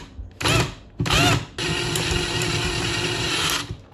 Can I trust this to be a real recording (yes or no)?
yes